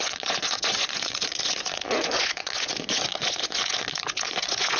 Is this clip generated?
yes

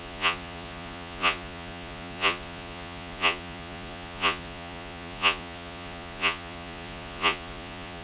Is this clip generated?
yes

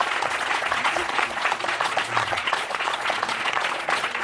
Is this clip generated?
yes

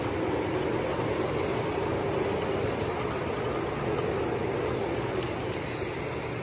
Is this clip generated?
no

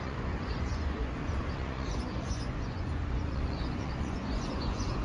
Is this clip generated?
yes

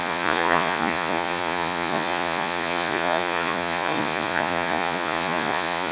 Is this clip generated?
yes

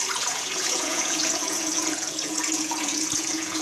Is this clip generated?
yes